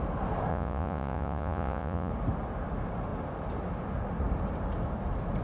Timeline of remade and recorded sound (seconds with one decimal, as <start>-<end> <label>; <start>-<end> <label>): 0.0-0.5 recorded; 0.5-2.1 remade; 2.1-5.4 recorded